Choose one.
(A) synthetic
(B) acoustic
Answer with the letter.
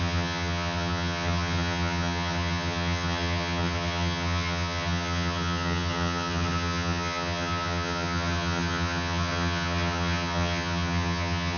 A